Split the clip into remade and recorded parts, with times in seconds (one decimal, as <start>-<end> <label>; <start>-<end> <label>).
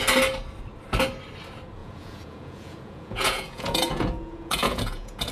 0.0-1.8 recorded; 1.8-5.3 remade